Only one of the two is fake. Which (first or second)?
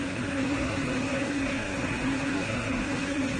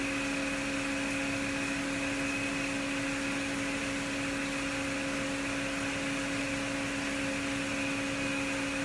first